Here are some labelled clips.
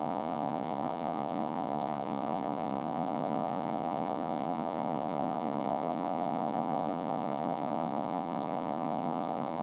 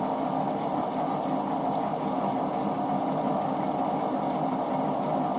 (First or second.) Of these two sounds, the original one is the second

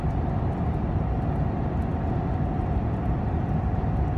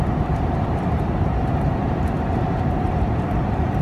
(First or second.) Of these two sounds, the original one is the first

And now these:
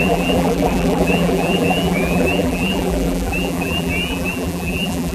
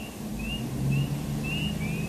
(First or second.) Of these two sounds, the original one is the second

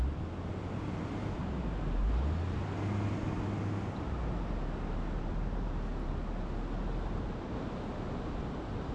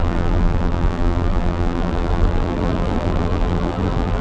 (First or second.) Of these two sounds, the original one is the first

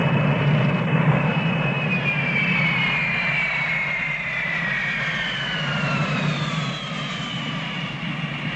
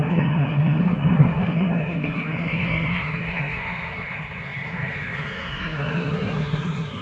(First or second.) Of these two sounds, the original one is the first